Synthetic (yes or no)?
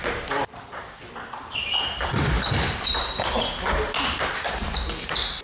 no